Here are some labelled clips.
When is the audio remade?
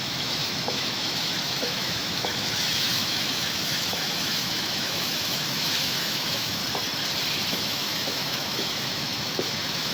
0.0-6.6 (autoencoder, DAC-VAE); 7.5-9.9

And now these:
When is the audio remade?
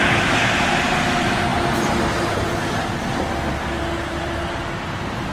none